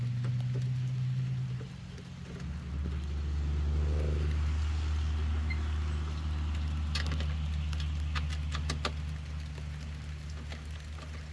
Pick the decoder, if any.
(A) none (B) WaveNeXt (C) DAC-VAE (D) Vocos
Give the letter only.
A